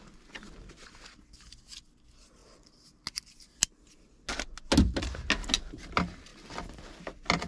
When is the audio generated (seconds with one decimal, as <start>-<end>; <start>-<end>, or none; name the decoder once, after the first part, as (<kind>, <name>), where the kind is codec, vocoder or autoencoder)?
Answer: none